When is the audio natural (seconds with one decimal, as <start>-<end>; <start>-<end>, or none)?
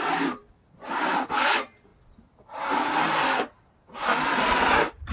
0.0-5.1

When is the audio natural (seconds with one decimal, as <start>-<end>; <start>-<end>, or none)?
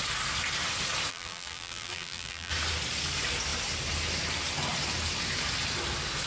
0.0-1.1; 2.5-6.3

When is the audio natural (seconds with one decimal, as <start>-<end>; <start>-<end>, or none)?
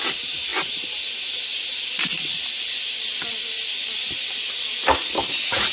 0.0-1.5; 4.3-5.7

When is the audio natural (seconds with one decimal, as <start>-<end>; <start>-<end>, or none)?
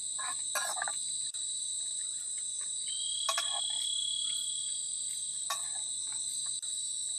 0.0-1.0; 2.6-7.2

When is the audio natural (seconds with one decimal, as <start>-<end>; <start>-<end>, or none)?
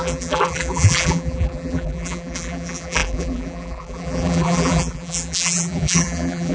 none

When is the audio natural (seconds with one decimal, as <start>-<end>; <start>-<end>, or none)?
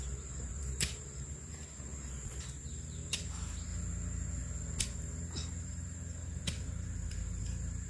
3.7-4.8